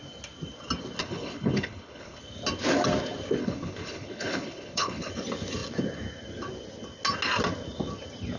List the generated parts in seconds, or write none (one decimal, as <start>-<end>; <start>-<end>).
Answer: 1.0-2.2; 3.4-5.1